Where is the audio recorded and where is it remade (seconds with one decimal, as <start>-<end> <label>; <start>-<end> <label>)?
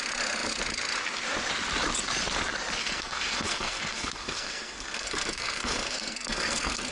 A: 0.0-2.8 recorded; 2.8-6.9 remade